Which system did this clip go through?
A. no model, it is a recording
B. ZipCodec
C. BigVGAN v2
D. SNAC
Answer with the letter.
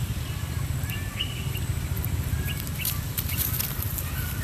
C